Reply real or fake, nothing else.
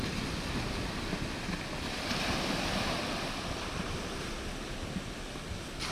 real